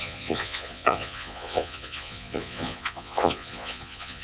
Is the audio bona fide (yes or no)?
no